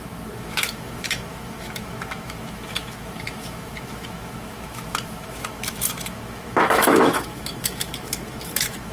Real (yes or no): no